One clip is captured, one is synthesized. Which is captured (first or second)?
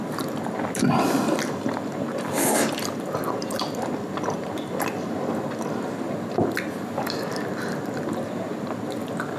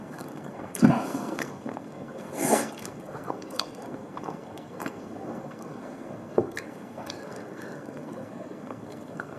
first